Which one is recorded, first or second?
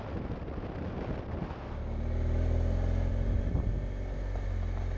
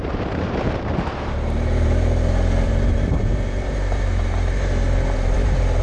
first